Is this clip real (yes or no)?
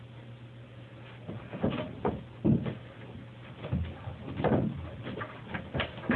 yes